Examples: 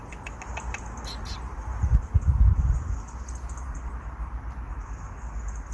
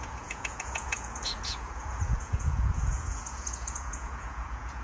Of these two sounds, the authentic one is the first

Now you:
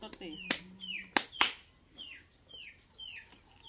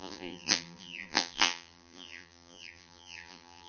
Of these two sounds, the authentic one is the first